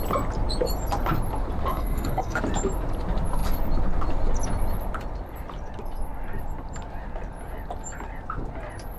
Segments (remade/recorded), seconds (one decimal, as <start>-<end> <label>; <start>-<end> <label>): 0.0-1.7 recorded; 1.7-2.4 remade; 2.4-9.0 recorded